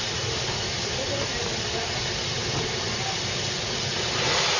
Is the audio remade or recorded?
recorded